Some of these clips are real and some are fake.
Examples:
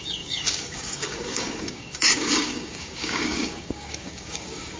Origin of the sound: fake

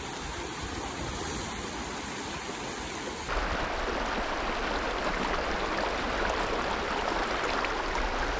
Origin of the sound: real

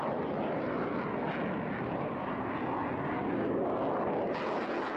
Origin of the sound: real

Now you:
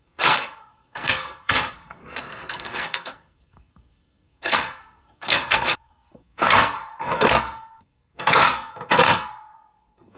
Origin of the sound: fake